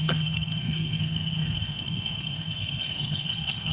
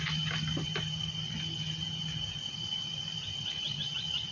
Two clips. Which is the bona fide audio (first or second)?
second